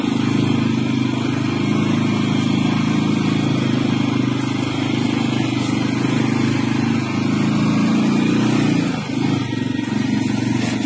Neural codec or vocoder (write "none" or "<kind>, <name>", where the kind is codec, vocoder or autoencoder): none